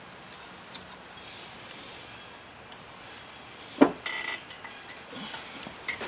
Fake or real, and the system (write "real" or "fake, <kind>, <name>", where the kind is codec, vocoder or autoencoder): real